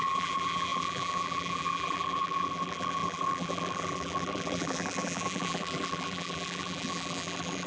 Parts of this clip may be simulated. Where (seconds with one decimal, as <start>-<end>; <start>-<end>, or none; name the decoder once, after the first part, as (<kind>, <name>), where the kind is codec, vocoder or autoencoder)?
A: 0.0-7.7 (vocoder, BigVGAN v2)